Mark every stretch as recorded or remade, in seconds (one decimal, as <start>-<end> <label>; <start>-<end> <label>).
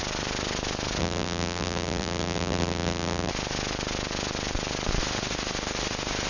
0.0-1.0 recorded; 1.0-3.3 remade; 3.3-6.3 recorded